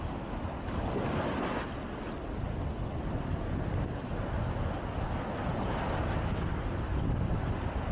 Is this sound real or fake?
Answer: real